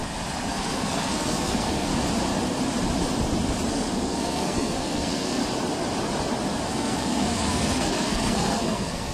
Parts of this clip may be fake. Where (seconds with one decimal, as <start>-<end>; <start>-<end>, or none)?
0.5-1.9; 3.7-5.4; 6.7-9.1